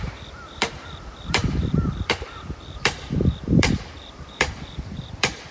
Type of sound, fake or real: fake